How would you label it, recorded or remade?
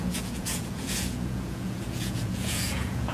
remade